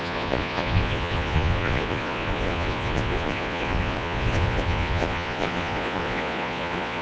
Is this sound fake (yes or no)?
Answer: yes